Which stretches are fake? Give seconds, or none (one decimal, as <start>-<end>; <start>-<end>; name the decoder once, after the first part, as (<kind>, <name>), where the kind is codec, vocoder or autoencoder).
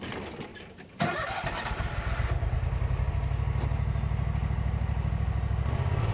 0.5-3.1 (vocoder, BigVGAN v2)